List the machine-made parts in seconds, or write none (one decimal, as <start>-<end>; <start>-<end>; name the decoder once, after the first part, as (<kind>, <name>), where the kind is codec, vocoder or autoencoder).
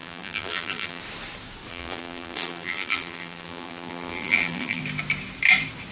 0.0-1.0 (vocoder, BigVGAN v2); 1.7-4.8